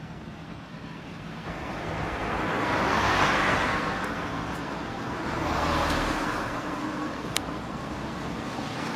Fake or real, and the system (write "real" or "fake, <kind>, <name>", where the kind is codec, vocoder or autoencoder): fake, codec, SNAC